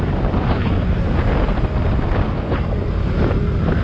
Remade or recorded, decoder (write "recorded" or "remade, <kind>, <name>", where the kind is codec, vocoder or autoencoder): recorded